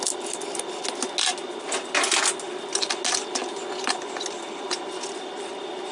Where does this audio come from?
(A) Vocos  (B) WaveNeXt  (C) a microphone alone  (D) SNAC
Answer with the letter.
C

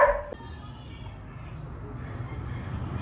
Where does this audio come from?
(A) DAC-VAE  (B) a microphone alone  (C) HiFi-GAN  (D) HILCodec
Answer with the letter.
B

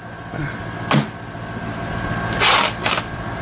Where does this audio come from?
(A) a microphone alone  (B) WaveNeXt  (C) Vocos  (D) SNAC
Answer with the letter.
A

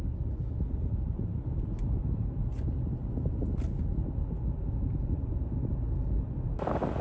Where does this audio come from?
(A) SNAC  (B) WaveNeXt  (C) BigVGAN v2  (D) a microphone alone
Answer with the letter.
D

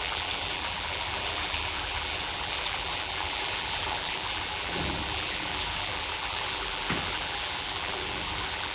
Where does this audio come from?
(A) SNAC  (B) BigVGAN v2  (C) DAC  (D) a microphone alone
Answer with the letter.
B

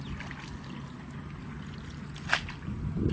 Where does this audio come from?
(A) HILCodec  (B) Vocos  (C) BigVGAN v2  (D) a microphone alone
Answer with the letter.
D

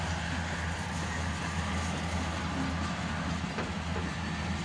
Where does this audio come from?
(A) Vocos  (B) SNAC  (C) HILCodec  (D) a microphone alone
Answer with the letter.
D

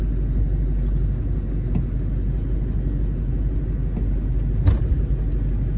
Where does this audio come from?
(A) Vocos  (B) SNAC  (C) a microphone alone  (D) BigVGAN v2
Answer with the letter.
C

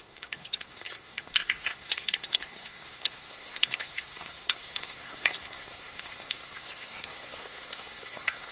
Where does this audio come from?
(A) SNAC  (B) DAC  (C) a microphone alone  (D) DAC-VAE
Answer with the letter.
A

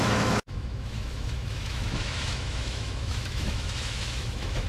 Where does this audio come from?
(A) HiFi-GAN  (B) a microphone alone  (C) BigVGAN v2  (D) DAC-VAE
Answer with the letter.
D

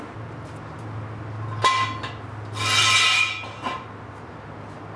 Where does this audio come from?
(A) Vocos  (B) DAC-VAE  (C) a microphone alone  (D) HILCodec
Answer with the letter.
C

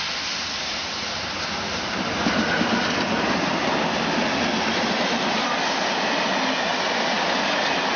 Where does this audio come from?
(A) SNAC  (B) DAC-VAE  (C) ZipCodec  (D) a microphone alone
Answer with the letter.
D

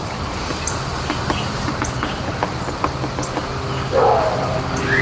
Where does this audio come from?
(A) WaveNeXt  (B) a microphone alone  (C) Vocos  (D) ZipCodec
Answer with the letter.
B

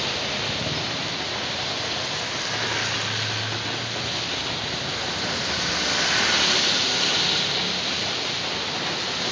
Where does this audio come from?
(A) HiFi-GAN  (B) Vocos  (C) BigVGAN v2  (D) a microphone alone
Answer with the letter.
D